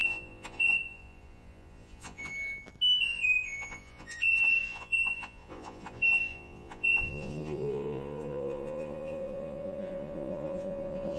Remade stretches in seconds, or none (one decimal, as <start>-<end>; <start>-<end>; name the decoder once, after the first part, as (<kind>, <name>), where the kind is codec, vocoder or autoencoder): 0.0-2.3 (vocoder, Vocos); 3.0-11.2